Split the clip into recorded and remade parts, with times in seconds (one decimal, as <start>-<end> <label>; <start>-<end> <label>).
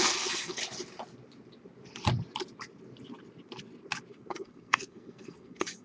0.0-0.6 remade; 0.6-4.1 recorded; 4.1-5.8 remade